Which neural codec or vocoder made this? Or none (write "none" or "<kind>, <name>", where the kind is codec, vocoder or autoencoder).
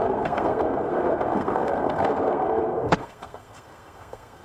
codec, SNAC